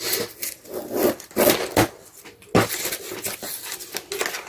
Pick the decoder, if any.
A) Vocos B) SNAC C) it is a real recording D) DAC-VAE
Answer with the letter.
C